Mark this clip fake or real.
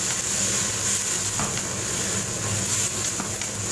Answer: real